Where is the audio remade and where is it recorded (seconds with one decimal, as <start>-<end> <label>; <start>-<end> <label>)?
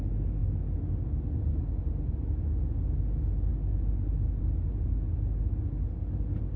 0.0-6.6 recorded